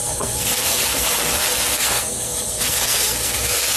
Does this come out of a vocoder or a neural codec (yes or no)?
yes